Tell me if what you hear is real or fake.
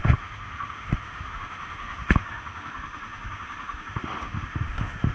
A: fake